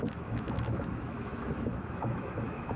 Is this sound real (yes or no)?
no